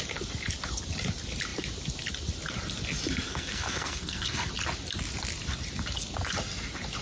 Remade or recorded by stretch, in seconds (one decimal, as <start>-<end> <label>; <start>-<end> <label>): 0.0-3.3 recorded; 3.3-4.5 remade; 4.5-7.0 recorded